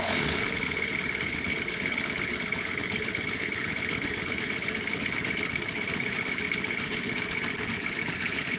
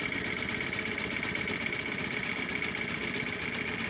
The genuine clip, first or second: second